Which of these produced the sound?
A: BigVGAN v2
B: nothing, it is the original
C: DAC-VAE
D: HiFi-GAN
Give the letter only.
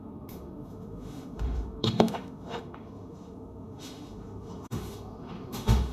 C